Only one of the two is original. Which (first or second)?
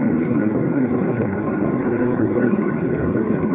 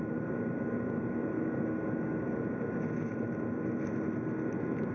second